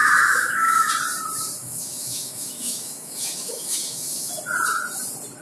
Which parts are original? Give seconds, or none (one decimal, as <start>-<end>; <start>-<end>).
0.9-1.6; 4.3-5.4